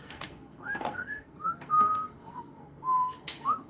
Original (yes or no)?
no